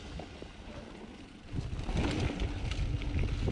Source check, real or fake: real